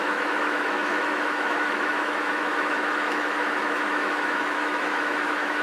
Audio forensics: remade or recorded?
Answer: remade